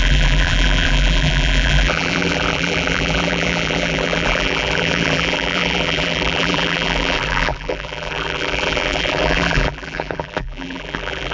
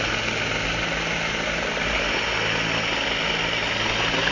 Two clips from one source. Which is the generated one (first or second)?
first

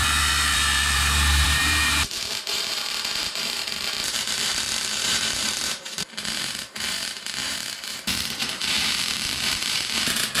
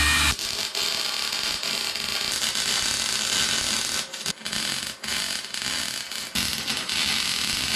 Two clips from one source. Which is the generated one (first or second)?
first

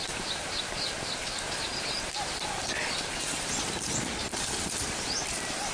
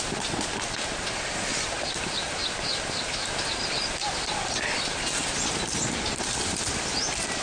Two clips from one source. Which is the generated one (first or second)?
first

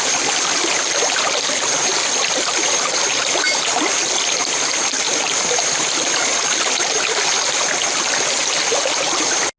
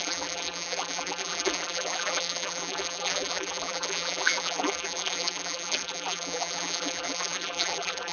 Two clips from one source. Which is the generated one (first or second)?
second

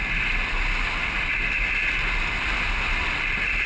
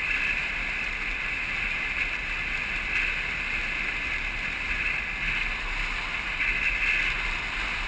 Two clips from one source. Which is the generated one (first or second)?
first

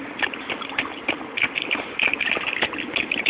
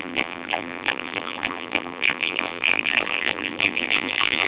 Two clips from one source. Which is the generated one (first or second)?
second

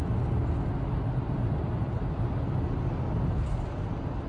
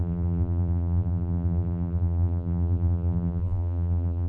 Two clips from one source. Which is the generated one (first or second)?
second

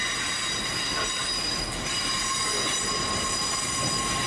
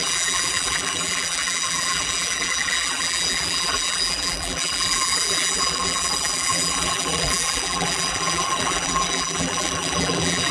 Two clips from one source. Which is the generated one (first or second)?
second